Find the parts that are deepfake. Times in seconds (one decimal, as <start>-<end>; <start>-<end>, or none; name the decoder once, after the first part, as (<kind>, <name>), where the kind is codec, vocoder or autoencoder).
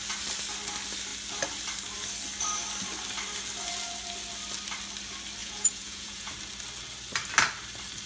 5.4-6.3 (vocoder, Vocos)